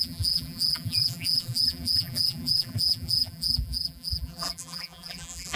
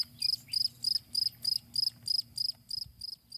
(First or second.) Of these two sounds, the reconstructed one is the first